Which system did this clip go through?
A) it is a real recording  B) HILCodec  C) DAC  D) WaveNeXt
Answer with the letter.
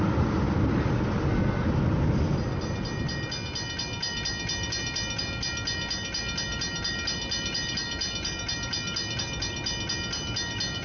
A